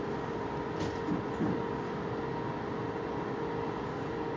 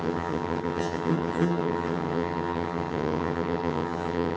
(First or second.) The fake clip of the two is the second